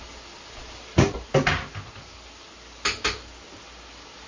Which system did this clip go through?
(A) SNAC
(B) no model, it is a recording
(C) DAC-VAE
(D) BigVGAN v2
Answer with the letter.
B